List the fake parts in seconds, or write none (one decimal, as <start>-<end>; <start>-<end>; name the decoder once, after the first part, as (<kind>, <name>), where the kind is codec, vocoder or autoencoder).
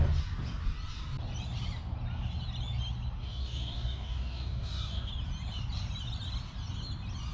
3.2-5.1 (codec, DAC)